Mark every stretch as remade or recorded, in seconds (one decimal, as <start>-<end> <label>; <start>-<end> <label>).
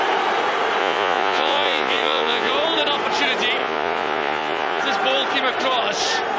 0.0-0.8 recorded; 0.8-2.5 remade; 2.5-3.6 recorded; 3.6-4.8 remade; 4.8-6.4 recorded